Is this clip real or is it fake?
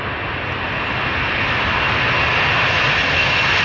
real